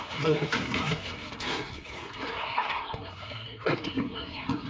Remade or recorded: remade